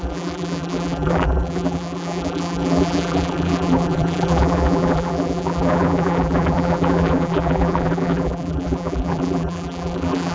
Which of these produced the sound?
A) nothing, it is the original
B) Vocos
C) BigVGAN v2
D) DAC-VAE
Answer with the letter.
C